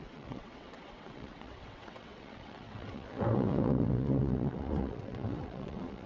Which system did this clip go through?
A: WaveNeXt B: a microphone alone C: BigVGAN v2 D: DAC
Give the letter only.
A